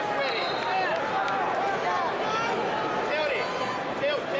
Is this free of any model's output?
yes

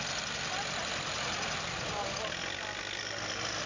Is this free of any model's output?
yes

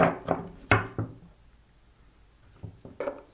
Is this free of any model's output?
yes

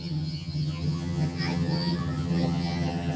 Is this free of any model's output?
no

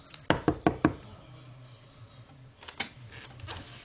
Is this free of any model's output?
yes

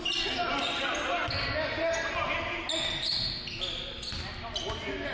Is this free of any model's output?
yes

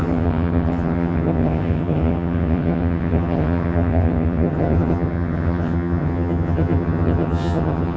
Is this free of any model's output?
no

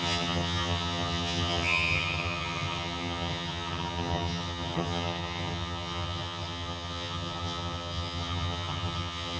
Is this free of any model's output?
no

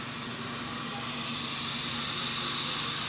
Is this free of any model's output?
yes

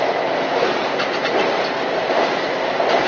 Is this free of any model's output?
yes